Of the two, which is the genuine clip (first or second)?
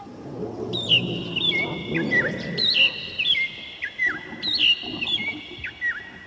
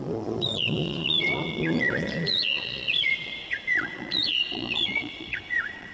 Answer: first